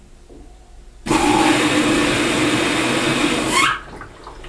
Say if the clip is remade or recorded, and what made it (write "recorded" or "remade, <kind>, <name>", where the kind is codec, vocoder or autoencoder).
recorded